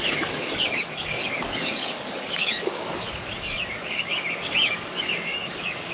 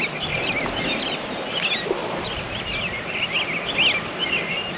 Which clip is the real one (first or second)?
second